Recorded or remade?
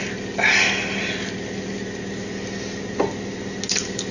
recorded